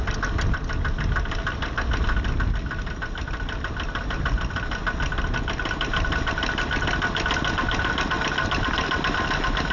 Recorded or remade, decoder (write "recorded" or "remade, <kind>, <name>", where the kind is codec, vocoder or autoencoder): recorded